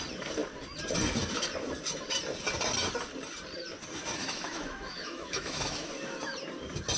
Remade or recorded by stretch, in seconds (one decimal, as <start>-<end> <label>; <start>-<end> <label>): 0.0-4.2 recorded; 4.2-5.9 remade; 5.9-7.0 recorded